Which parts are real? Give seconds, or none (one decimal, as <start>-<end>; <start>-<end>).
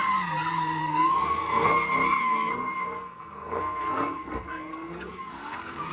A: 0.0-0.8; 1.7-2.2